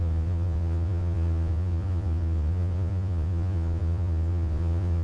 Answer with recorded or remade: remade